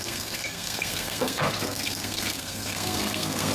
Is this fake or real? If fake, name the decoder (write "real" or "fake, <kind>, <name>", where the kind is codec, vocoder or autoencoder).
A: fake, codec, SNAC